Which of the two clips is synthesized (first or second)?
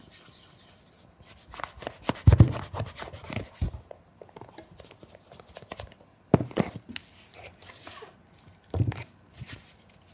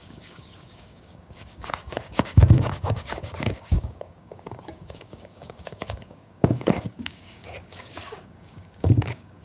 second